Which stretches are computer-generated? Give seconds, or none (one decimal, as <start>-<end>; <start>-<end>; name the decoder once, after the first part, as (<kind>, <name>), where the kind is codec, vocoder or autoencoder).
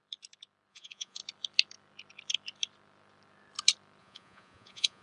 0.7-1.2 (vocoder, Vocos); 4.0-5.0